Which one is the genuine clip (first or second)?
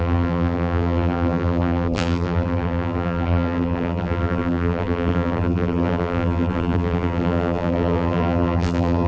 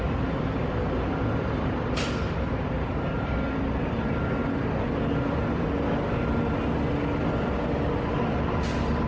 second